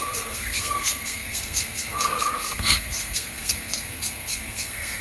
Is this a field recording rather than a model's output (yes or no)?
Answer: no